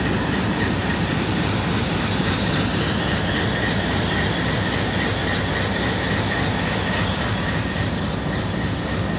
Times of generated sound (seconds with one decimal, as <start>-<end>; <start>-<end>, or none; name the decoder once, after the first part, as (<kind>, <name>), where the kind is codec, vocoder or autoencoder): 0.8-3.2 (vocoder, BigVGAN v2)